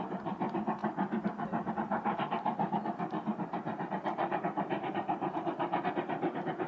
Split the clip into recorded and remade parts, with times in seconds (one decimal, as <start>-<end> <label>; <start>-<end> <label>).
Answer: 0.0-0.8 recorded; 0.8-1.7 remade; 1.7-3.3 recorded; 3.3-5.8 remade; 5.8-6.7 recorded